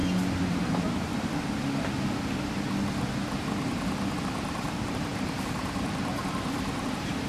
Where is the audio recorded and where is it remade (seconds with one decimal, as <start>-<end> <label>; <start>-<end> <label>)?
0.0-4.2 recorded; 4.2-7.3 remade